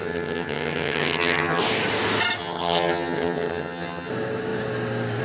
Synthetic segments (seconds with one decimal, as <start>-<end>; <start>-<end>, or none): 0.0-1.6; 2.4-4.1